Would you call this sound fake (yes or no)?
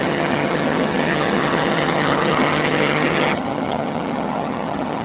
yes